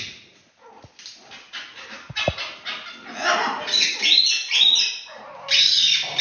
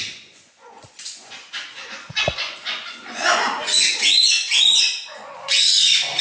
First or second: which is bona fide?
first